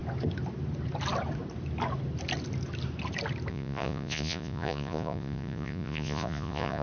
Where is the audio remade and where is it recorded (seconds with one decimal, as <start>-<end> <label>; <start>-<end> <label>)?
0.0-3.5 recorded; 3.5-6.8 remade